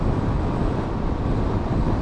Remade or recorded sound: remade